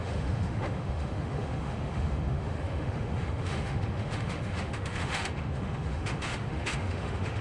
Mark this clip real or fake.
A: fake